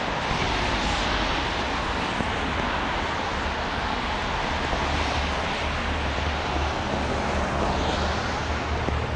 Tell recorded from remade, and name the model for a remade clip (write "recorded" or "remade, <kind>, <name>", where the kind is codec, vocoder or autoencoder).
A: recorded